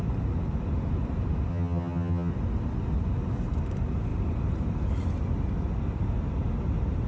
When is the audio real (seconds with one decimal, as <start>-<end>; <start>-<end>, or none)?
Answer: 0.0-1.5; 2.3-7.1